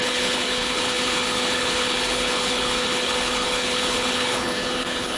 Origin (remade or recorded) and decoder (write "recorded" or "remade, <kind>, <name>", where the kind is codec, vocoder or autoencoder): remade, codec, HILCodec